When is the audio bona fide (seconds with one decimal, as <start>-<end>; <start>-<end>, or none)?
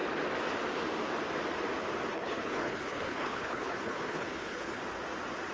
0.0-2.1; 4.8-5.5